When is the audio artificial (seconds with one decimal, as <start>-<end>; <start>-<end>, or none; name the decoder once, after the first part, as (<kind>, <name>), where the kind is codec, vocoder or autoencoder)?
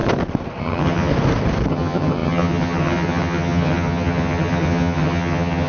0.6-1.1 (vocoder, HiFi-GAN); 1.7-5.7